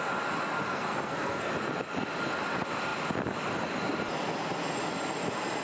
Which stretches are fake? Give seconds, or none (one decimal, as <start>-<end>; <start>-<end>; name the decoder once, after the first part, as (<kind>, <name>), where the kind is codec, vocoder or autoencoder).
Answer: 0.7-1.5 (codec, SNAC)